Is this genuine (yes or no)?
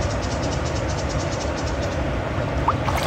yes